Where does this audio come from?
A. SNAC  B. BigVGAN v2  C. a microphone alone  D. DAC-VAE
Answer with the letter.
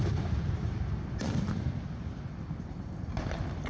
C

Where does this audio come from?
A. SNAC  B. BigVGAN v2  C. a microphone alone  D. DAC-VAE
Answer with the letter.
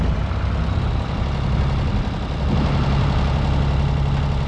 C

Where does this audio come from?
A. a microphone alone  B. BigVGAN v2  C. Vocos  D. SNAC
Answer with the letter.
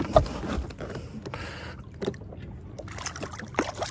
A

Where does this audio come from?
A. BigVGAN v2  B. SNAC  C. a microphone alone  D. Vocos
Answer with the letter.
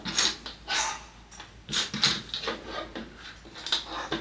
C